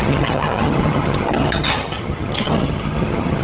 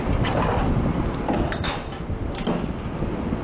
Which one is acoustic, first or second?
second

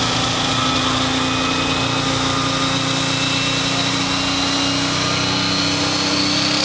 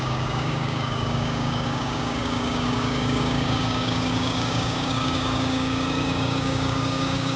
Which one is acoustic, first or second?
first